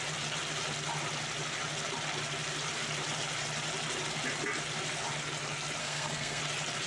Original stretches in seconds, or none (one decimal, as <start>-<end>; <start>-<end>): 0.0-5.8; 6.4-6.9